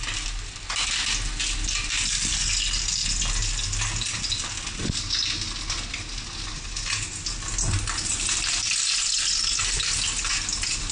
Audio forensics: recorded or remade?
recorded